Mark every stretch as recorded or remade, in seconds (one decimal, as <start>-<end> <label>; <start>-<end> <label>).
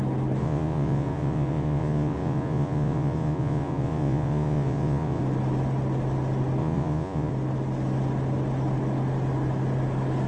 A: 0.0-0.4 recorded; 0.4-5.2 remade; 5.2-6.6 recorded; 6.6-7.3 remade; 7.3-10.3 recorded